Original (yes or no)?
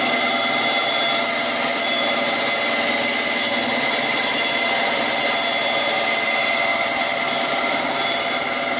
yes